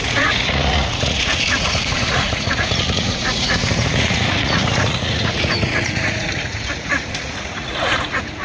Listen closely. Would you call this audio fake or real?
fake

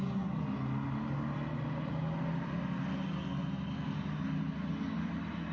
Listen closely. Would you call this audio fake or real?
real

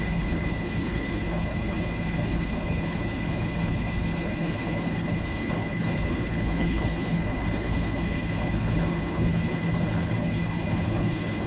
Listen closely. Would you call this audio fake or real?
fake